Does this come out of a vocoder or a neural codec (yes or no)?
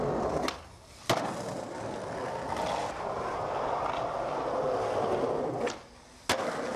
no